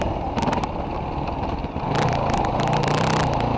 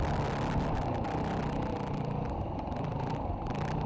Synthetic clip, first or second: second